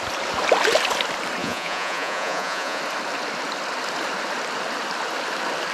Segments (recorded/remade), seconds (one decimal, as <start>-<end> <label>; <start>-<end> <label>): 0.0-1.4 recorded; 1.4-2.8 remade; 2.8-5.7 recorded

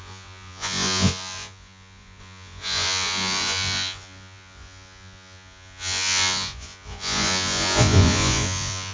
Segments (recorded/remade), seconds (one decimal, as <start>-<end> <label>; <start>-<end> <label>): 0.0-8.9 remade

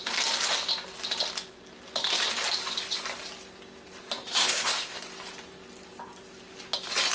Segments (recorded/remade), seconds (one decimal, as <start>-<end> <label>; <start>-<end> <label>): 0.0-4.4 recorded; 4.4-5.0 remade; 5.0-7.1 recorded

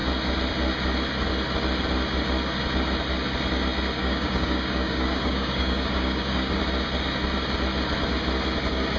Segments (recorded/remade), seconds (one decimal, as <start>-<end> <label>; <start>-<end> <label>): 0.0-4.0 recorded; 4.0-6.6 remade; 6.6-9.0 recorded

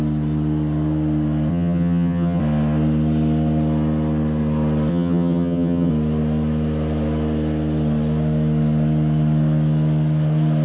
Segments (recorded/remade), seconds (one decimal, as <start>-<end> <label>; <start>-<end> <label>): 0.0-1.5 recorded; 1.5-2.4 remade; 2.4-4.9 recorded; 4.9-5.9 remade; 5.9-10.6 recorded

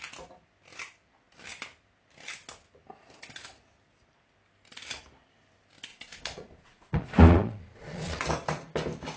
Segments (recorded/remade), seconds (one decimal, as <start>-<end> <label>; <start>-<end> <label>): 0.0-5.9 recorded; 5.9-8.2 remade; 8.2-9.2 recorded

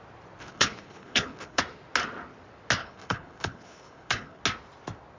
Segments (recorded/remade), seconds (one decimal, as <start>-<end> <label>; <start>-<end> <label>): 0.0-0.4 recorded; 0.4-1.6 remade; 1.6-2.8 recorded; 2.8-4.4 remade; 4.4-5.2 recorded

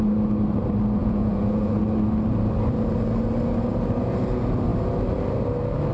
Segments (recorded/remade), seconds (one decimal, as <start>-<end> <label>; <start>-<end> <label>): 0.0-1.0 recorded; 1.0-1.8 remade; 1.8-5.9 recorded